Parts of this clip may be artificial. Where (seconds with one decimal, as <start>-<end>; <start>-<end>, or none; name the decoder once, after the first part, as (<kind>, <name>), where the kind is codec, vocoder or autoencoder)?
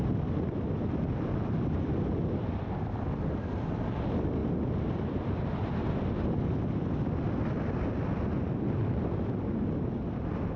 none